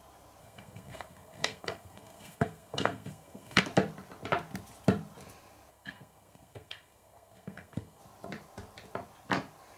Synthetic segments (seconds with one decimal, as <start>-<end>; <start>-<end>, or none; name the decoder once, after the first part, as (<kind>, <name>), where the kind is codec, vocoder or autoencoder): 0.4-3.6 (codec, SNAC); 5.7-8.0